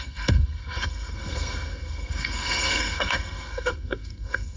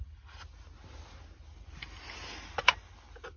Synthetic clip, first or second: first